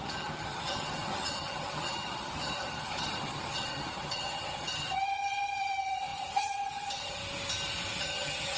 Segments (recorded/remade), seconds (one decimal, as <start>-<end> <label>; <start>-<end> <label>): 0.0-7.2 remade; 7.2-8.0 recorded; 8.0-8.6 remade